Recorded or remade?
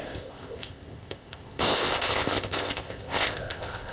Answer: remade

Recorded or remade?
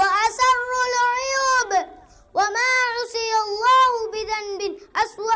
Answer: recorded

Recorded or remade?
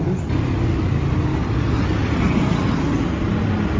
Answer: recorded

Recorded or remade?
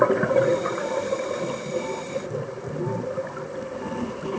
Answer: recorded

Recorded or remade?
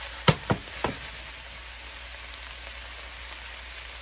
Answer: recorded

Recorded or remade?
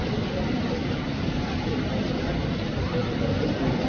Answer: recorded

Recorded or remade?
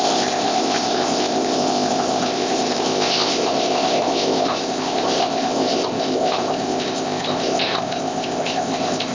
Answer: remade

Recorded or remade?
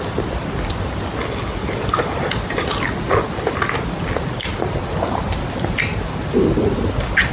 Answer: recorded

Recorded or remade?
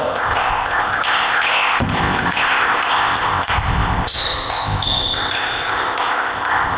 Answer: remade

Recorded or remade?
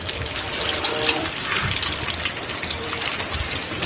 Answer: recorded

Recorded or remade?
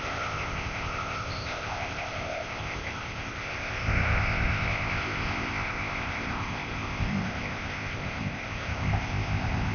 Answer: remade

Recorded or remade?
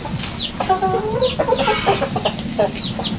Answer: recorded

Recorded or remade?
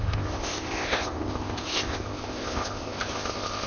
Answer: remade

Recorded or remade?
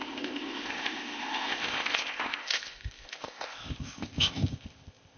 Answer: remade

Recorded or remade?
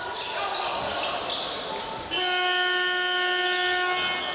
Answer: recorded